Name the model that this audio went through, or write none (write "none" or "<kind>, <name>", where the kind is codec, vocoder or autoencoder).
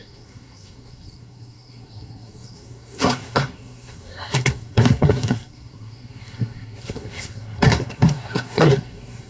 codec, SNAC